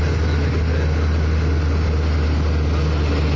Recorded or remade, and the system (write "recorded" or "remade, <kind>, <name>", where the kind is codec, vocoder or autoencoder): recorded